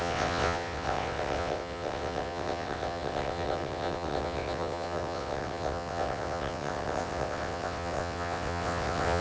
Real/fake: fake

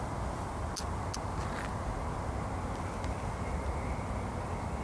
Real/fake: real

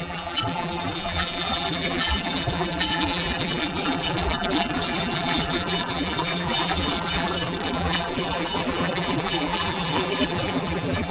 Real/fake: fake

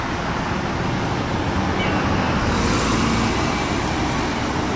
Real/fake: real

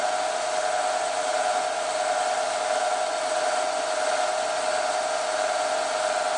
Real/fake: real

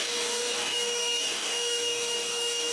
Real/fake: fake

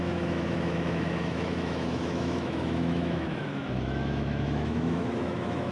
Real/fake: fake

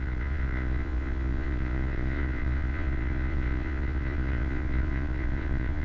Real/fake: fake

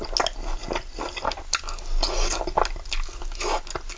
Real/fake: real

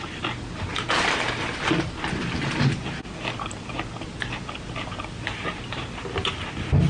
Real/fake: real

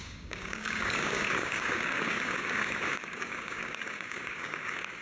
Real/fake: fake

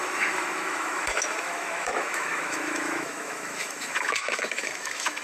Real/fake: fake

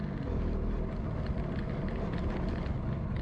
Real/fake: real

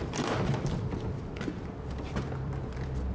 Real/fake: fake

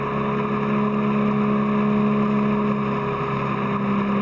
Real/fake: real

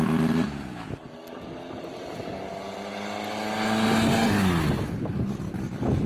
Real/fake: real